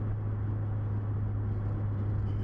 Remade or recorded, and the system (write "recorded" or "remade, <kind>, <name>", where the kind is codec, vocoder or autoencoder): recorded